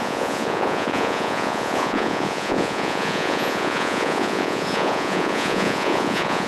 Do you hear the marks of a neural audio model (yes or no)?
yes